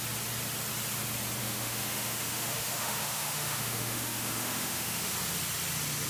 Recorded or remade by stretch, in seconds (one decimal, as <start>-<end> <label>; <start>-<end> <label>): 0.0-1.4 recorded; 1.4-5.1 remade; 5.1-6.1 recorded